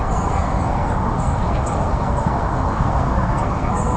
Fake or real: fake